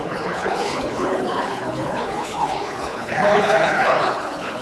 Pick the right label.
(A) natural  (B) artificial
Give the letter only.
B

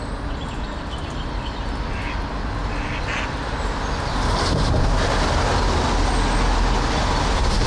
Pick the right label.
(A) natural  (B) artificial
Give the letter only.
A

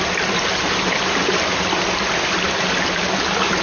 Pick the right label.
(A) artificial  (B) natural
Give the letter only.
B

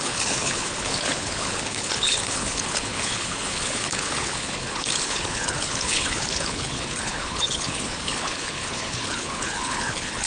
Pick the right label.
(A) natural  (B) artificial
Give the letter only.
B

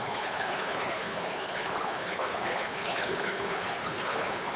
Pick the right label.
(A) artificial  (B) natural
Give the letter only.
A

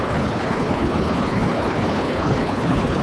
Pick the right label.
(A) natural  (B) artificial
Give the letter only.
B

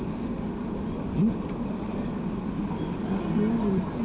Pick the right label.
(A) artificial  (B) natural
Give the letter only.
B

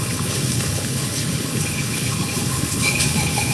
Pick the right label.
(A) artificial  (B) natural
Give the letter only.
A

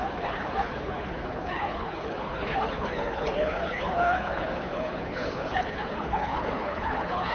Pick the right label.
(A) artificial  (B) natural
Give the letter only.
A